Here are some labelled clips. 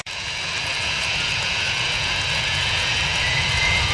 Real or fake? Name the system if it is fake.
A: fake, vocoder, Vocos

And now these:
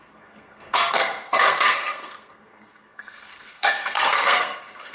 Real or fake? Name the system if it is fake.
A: fake, codec, SNAC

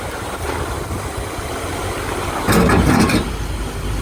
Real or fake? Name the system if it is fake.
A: real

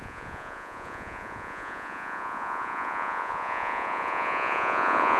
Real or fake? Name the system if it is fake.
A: fake, vocoder, Vocos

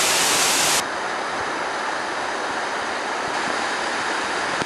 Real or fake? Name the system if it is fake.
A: real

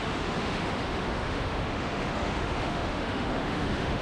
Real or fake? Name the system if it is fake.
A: fake, autoencoder, DAC-VAE